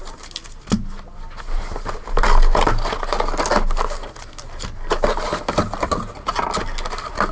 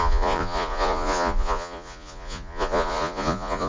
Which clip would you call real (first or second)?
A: first